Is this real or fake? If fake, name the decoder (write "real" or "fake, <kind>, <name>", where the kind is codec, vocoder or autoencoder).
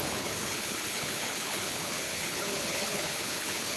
fake, codec, HILCodec